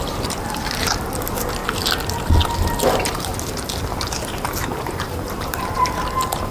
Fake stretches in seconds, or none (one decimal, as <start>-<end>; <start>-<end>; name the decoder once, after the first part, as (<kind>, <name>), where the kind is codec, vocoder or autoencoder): 0.0-1.6 (vocoder, BigVGAN v2); 2.5-3.3; 4.6-6.5